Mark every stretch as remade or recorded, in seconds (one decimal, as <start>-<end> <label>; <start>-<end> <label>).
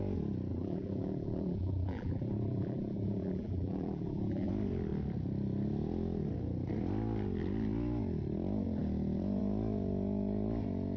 0.0-0.5 recorded; 0.5-4.5 remade; 4.5-11.0 recorded